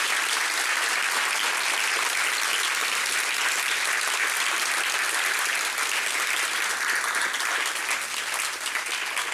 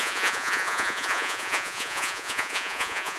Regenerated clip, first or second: second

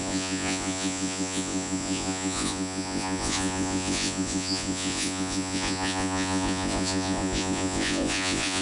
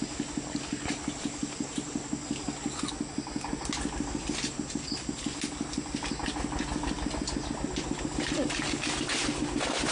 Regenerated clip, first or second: first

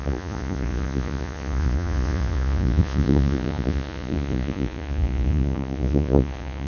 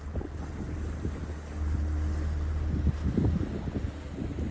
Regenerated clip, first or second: first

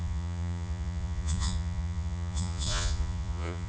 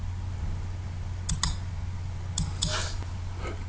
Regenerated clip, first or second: first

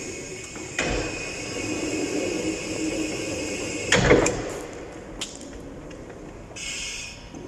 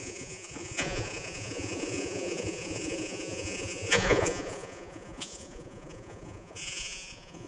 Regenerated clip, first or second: second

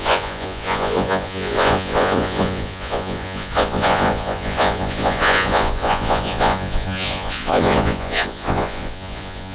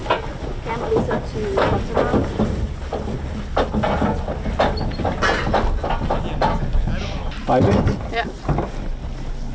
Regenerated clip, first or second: first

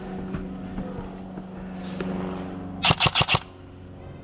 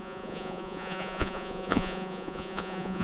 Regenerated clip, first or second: second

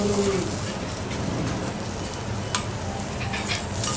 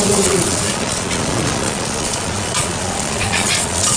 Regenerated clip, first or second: second